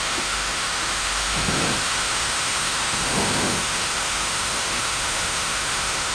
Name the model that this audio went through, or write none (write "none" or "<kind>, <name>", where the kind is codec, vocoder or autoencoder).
autoencoder, DAC-VAE